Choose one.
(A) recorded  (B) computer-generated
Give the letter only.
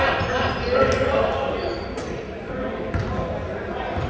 A